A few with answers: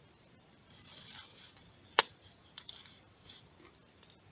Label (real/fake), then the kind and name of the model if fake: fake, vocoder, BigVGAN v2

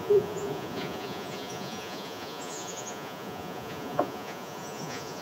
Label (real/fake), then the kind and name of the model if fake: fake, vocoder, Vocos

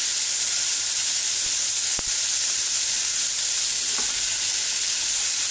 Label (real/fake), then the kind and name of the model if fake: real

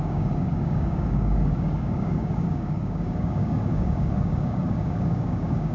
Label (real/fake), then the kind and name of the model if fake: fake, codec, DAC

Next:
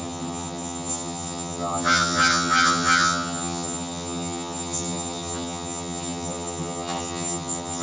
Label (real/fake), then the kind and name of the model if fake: fake, vocoder, HiFi-GAN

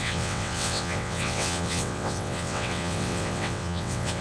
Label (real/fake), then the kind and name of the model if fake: fake, vocoder, WaveNeXt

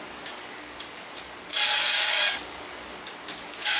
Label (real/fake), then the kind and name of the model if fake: fake, codec, DAC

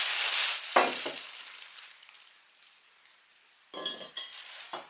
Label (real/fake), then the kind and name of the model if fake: real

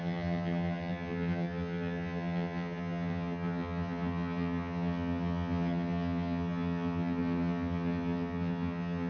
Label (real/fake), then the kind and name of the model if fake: fake, vocoder, HiFi-GAN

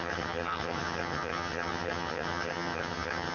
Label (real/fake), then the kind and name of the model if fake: fake, vocoder, HiFi-GAN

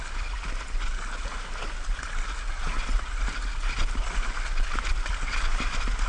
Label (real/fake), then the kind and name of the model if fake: real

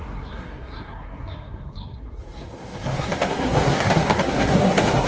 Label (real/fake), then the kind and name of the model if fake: fake, codec, SNAC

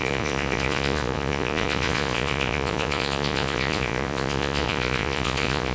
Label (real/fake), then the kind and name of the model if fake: fake, vocoder, Vocos